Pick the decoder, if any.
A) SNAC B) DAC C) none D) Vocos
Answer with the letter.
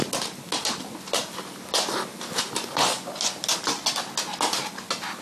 C